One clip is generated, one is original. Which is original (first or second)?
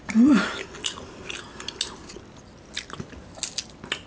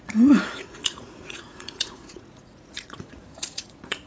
first